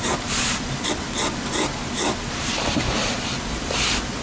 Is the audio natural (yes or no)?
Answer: yes